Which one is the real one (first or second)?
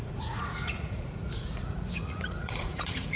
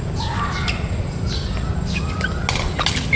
second